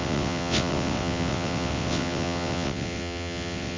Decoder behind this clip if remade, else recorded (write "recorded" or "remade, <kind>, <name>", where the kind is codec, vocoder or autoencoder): remade, vocoder, WaveNeXt